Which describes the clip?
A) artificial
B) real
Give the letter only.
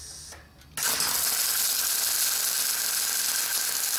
B